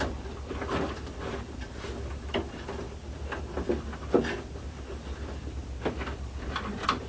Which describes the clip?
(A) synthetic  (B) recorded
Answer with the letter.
B